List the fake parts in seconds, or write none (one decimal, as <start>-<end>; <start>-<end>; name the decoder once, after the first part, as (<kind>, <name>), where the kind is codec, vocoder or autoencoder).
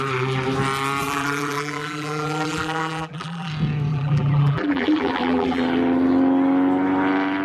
1.0-3.5 (vocoder, BigVGAN v2); 3.9-5.6